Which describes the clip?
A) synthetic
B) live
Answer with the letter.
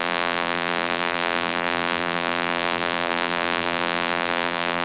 A